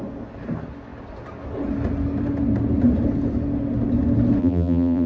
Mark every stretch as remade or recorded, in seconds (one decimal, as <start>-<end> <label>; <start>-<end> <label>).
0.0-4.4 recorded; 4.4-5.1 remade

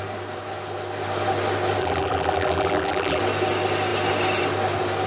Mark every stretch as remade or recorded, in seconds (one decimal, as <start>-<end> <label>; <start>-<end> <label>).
0.0-1.8 recorded; 1.8-3.2 remade; 3.2-5.1 recorded

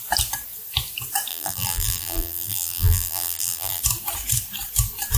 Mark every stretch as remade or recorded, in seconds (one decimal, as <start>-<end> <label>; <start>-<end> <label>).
0.0-1.3 recorded; 1.3-3.8 remade; 3.8-5.2 recorded

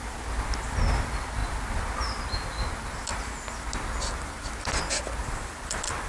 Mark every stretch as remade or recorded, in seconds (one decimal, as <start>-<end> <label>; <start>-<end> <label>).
0.0-6.1 recorded

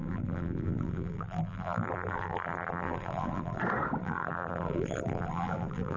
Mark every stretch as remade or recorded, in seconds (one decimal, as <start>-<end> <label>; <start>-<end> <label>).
0.0-3.6 remade; 3.6-4.0 recorded; 4.0-6.0 remade

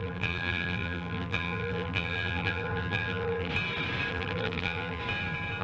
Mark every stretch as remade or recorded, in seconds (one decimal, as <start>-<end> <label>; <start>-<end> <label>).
0.0-3.5 remade; 3.5-4.1 recorded; 4.1-5.0 remade; 5.0-5.6 recorded

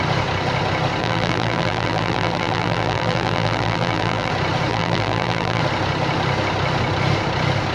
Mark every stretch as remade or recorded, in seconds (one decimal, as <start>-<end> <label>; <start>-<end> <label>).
0.0-1.0 recorded; 1.0-4.3 remade; 4.3-4.7 recorded; 4.7-5.6 remade; 5.6-7.7 recorded